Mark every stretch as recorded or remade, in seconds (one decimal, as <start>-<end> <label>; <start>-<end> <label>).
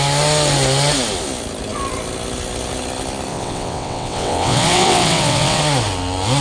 0.0-3.3 recorded; 3.3-5.6 remade; 5.6-6.4 recorded